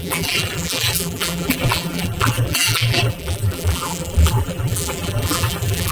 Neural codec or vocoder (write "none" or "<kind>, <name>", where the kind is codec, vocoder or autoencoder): vocoder, BigVGAN v2